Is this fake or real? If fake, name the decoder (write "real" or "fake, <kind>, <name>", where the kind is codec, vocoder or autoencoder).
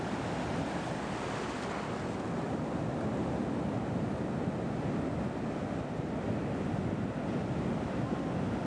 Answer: real